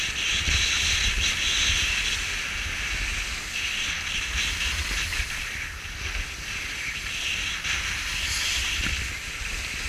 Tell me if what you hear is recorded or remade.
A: recorded